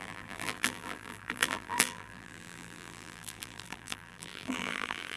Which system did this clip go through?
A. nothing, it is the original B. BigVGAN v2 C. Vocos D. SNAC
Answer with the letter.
B